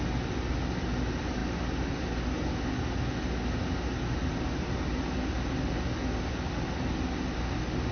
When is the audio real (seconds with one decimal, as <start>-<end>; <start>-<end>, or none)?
0.0-7.9